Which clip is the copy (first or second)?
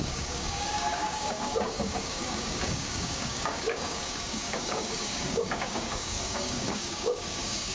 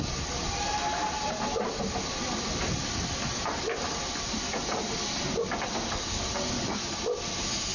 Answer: first